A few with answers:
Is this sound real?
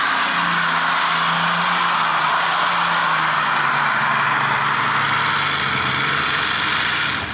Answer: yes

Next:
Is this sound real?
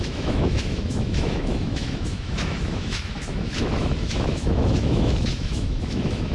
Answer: no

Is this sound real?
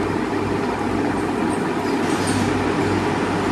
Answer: yes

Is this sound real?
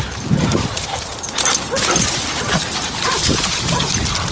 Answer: yes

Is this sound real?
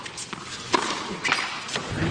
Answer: yes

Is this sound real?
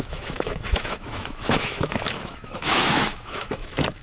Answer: no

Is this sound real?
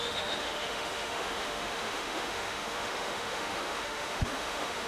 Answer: no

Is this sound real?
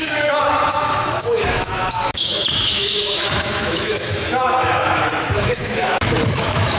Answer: no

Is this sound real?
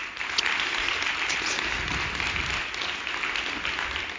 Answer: yes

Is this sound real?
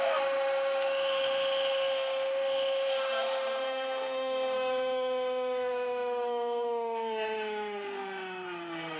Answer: no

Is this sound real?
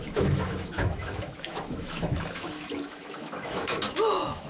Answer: no